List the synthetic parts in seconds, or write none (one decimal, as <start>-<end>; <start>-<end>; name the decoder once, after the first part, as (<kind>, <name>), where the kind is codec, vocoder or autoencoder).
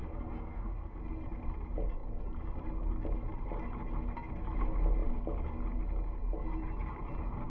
0.0-1.0 (codec, SNAC)